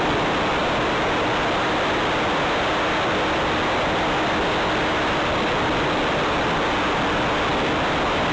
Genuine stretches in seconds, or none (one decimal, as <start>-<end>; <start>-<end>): 0.0-8.3